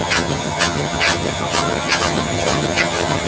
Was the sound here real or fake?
fake